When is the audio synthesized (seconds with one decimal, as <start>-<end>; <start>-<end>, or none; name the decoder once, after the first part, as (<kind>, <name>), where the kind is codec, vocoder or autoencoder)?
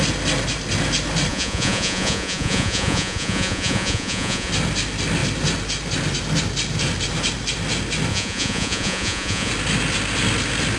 1.3-4.5 (vocoder, Vocos); 8.1-9.5